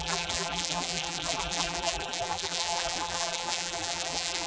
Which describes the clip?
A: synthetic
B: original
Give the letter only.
A